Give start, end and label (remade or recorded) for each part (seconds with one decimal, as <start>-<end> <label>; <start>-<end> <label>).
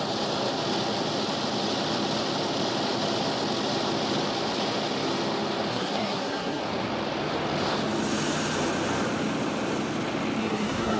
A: 0.0-5.7 recorded; 5.7-6.6 remade; 6.6-10.4 recorded; 10.4-11.0 remade